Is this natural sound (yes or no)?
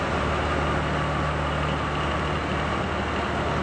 yes